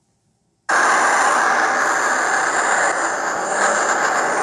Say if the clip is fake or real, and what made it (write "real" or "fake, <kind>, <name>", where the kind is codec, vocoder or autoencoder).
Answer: real